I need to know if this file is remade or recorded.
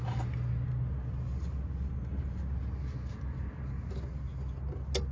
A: recorded